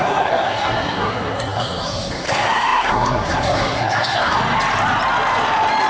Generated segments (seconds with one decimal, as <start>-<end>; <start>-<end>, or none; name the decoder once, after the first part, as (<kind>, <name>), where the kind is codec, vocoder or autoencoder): 0.0-4.4 (codec, SNAC)